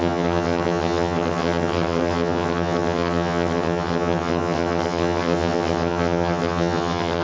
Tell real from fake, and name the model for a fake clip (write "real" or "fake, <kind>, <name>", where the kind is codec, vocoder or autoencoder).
fake, vocoder, HiFi-GAN